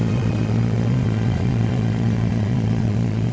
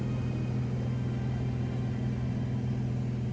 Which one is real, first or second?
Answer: second